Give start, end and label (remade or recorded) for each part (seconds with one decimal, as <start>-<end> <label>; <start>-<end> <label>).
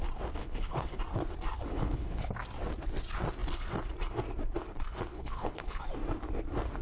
0.0-0.4 recorded; 0.4-1.0 remade; 1.0-1.7 recorded; 1.7-2.3 remade; 2.3-5.1 recorded; 5.1-5.8 remade; 5.8-6.8 recorded